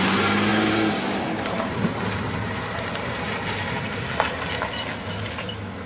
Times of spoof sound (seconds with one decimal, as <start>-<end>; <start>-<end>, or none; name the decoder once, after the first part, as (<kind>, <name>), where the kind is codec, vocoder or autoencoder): 0.5-4.0 (vocoder, BigVGAN v2)